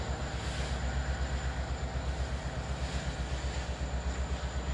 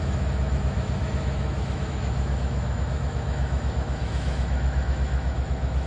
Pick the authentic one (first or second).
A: first